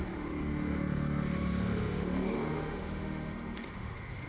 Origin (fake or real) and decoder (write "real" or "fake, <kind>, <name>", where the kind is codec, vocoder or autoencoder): fake, autoencoder, DAC-VAE